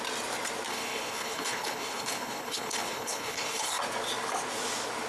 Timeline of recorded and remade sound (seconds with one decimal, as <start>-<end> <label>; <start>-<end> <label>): 0.0-0.7 recorded; 0.7-3.8 remade; 3.8-5.1 recorded